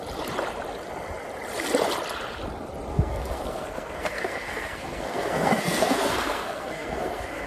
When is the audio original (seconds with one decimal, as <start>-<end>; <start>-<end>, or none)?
0.0-2.9